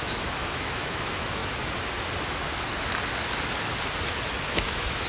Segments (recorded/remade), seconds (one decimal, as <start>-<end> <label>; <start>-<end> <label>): 0.0-1.4 remade; 1.4-4.5 recorded; 4.5-5.1 remade